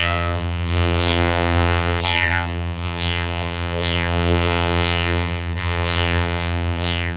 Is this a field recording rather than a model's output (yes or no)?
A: no